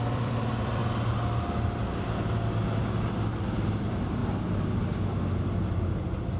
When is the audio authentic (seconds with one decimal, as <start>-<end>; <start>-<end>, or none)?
0.8-3.1; 4.2-5.9

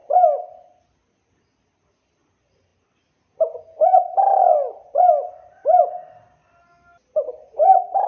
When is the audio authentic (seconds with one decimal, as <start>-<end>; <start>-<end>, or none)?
0.0-8.1